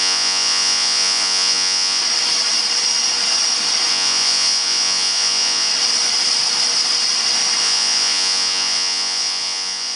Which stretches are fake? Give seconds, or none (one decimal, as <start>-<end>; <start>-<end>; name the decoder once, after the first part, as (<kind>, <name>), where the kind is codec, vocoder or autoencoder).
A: 0.0-2.0 (vocoder, Vocos); 3.9-5.7; 7.6-10.0